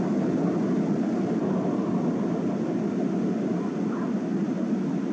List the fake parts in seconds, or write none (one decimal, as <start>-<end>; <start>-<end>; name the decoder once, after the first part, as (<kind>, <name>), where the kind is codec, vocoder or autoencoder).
none